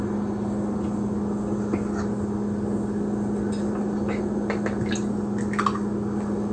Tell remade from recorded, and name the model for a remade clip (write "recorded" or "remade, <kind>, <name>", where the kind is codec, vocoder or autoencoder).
recorded